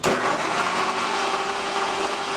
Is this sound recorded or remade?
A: remade